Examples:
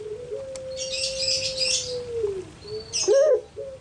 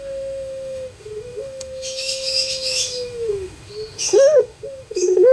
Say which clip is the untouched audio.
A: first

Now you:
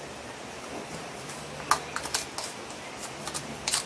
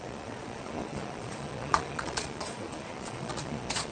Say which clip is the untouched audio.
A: first